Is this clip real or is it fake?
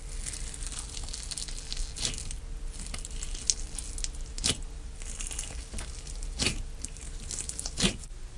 real